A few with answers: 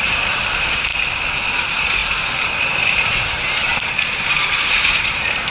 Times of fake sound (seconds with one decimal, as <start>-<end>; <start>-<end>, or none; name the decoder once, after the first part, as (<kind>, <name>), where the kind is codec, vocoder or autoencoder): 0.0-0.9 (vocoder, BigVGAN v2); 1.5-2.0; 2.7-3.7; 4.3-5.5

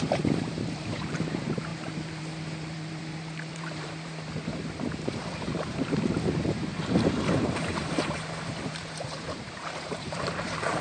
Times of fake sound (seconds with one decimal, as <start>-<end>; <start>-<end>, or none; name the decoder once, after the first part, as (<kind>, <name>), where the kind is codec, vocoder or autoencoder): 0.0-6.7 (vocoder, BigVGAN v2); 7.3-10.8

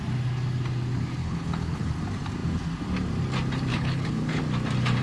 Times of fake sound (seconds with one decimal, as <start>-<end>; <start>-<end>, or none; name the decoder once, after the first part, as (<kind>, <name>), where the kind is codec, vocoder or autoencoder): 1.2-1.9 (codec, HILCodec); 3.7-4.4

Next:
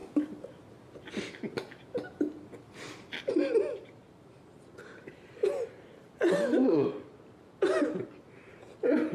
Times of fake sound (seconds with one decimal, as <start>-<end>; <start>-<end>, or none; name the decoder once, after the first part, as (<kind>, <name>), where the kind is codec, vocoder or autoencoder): 3.3-9.1 (vocoder, BigVGAN v2)

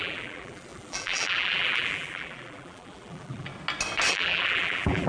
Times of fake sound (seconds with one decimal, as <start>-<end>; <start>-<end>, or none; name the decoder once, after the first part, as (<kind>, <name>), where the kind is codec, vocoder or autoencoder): 0.0-3.5 (vocoder, BigVGAN v2); 4.1-5.1

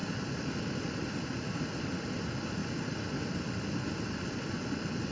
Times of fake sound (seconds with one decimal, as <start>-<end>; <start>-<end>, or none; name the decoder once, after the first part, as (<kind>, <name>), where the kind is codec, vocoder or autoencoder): none

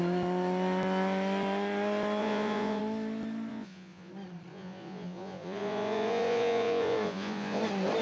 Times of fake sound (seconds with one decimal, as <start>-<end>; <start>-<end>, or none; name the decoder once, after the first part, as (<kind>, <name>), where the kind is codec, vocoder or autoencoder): 2.2-2.8 (vocoder, Vocos); 3.5-4.1; 4.5-7.6